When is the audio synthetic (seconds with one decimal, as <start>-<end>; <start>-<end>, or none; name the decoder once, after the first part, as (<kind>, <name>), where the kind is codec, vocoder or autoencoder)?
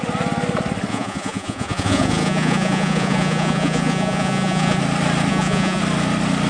0.9-4.8 (vocoder, Vocos); 5.3-5.8